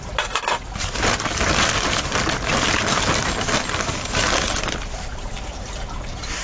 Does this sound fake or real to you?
real